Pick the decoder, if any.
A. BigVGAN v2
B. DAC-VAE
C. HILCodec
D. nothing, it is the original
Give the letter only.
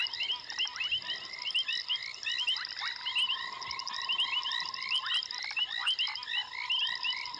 D